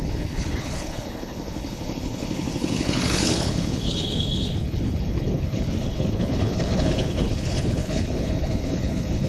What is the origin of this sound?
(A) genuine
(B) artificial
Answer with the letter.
B